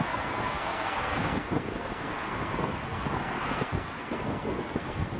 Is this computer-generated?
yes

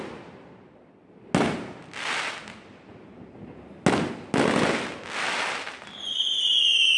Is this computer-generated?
no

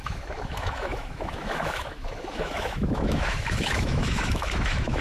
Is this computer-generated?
yes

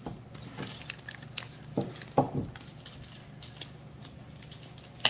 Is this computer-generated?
no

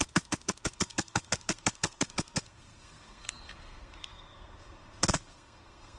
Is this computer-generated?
yes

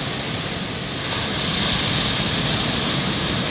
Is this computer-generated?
no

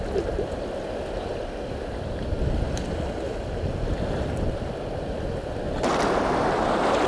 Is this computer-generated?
no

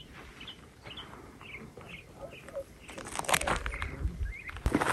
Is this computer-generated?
no